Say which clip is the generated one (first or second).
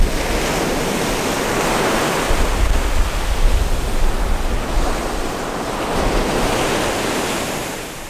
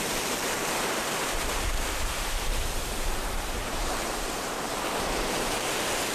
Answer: second